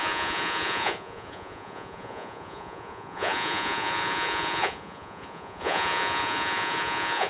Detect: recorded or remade remade